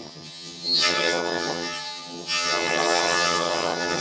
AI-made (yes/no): yes